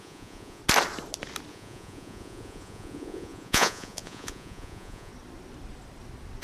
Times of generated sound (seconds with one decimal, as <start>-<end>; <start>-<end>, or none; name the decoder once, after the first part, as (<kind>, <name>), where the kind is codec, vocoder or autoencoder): 0.0-0.6 (vocoder, Vocos); 1.5-5.1